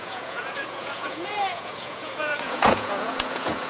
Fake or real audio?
fake